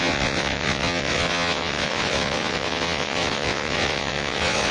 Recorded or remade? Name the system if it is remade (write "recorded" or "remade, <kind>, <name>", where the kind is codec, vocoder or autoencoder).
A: remade, vocoder, WaveNeXt